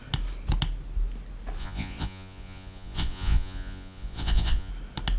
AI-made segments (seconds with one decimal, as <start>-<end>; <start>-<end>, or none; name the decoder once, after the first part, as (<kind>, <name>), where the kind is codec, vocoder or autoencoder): 1.6-4.7 (vocoder, Vocos)